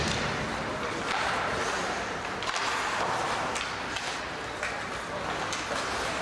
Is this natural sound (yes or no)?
yes